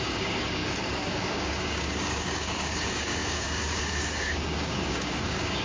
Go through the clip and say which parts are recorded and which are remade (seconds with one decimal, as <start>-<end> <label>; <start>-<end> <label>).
0.0-5.6 remade